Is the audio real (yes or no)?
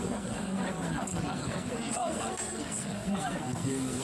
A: no